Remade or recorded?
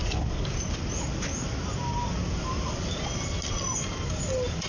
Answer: recorded